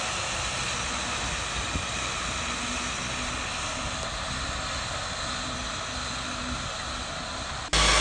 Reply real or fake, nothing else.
real